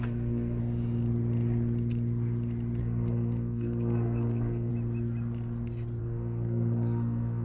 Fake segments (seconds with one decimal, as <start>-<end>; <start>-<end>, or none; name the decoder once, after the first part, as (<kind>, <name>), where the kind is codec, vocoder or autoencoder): 0.0-0.6 (codec, SNAC); 2.8-4.7; 6.0-7.4